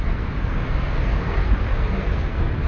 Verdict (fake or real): fake